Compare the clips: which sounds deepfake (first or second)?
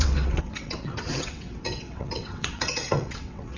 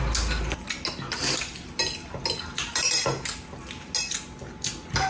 first